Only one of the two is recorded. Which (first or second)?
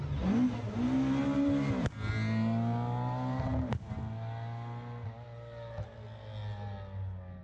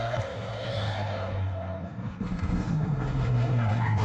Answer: first